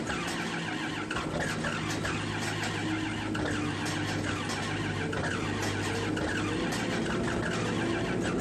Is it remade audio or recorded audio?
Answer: recorded